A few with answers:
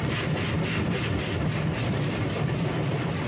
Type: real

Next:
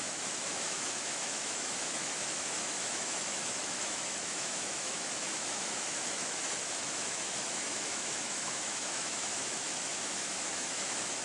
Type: fake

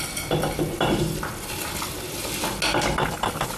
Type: real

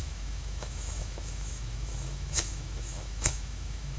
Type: fake